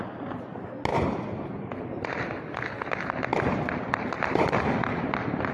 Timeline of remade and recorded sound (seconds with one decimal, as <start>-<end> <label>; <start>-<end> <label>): 0.0-5.5 recorded